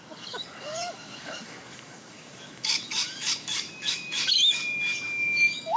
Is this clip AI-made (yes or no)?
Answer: yes